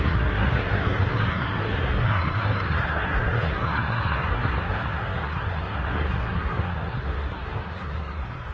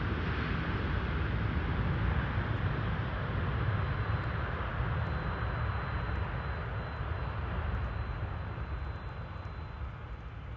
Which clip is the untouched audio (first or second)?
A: second